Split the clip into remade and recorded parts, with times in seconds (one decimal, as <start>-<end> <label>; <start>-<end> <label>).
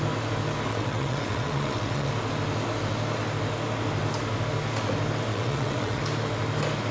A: 0.0-0.7 recorded; 0.7-2.1 remade; 2.1-5.3 recorded; 5.3-6.0 remade; 6.0-6.9 recorded